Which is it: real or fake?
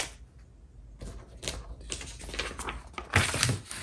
real